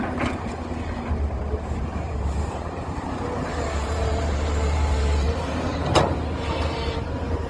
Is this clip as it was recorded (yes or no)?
no